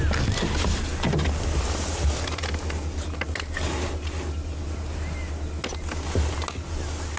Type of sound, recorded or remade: recorded